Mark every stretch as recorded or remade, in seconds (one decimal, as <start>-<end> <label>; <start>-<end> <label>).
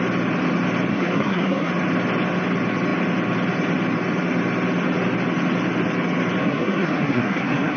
0.0-0.9 recorded; 0.9-1.7 remade; 1.7-6.4 recorded; 6.4-7.8 remade